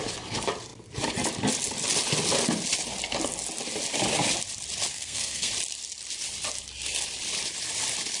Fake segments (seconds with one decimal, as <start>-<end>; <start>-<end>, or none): 4.9-5.5